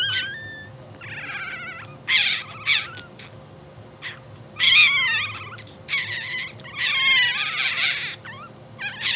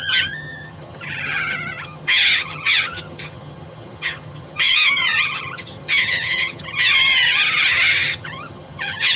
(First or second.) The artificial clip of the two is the second